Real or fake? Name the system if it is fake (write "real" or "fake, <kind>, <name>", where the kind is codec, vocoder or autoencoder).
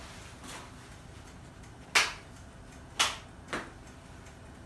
real